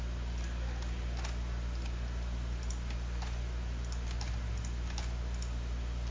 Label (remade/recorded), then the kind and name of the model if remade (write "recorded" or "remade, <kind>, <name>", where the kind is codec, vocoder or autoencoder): recorded